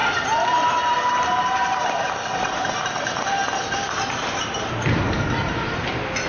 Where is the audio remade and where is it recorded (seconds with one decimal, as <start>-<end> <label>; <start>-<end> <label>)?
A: 0.0-6.3 remade